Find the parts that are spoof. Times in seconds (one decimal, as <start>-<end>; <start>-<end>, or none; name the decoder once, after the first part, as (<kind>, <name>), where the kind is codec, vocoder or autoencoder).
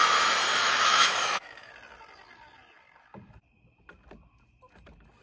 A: 0.5-1.7 (autoencoder, DAC-VAE)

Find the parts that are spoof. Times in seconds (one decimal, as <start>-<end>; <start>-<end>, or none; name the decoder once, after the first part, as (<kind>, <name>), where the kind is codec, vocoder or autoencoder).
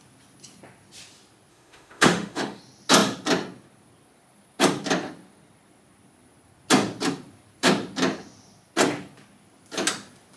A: 1.5-2.6 (autoencoder, DAC-VAE)